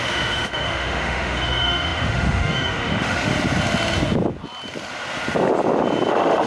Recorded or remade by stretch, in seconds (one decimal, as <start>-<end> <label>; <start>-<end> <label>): 0.0-3.3 remade; 3.3-6.1 recorded; 6.1-6.5 remade